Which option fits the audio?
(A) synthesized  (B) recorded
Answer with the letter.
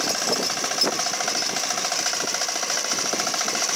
B